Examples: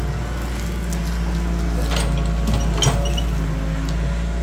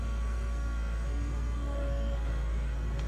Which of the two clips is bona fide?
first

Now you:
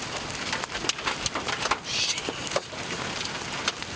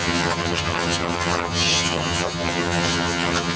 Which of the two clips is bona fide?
first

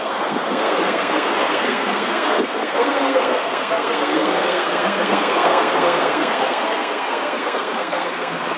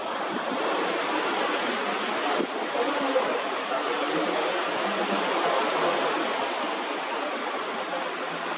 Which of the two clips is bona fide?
second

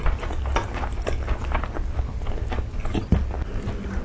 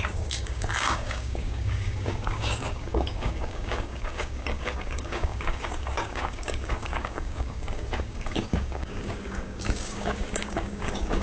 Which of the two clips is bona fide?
first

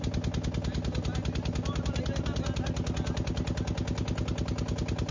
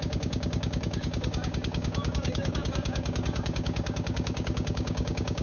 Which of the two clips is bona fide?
first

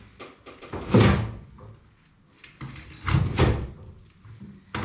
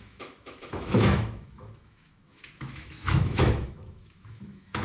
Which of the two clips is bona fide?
first